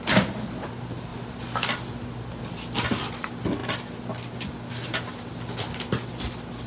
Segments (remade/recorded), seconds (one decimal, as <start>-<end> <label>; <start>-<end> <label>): 0.0-6.7 recorded